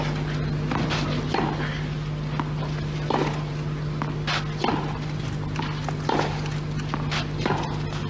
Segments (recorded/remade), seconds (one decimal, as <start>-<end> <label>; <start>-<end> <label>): 0.0-8.1 recorded